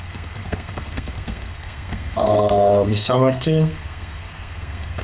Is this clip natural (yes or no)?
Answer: no